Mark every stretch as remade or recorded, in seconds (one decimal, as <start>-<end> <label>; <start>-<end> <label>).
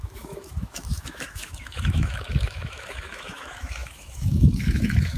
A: 0.0-5.2 remade